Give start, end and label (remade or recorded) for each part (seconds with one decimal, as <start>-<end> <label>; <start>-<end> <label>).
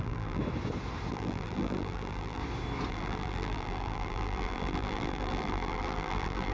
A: 0.0-0.4 remade; 0.4-1.1 recorded; 1.1-2.4 remade; 2.4-2.9 recorded; 2.9-6.5 remade